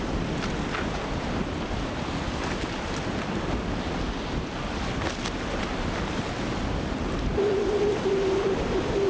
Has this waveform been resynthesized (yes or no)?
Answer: no